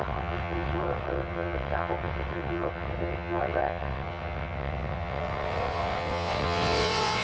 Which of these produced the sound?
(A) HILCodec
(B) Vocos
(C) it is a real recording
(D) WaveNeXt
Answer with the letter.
D